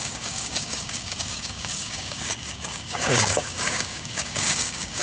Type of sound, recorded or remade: remade